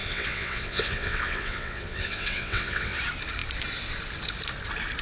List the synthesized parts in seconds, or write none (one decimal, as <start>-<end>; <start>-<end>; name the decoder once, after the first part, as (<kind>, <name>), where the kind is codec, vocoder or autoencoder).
0.0-3.0 (vocoder, WaveNeXt)